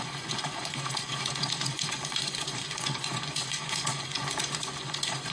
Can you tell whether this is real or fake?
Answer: fake